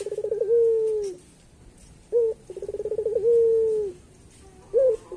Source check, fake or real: real